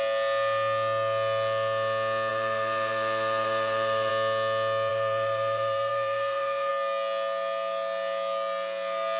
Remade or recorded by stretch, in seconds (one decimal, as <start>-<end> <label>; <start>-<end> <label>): 0.0-2.3 recorded; 2.3-4.1 remade; 4.1-4.9 recorded; 4.9-6.7 remade; 6.7-9.2 recorded